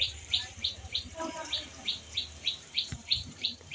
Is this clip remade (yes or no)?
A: yes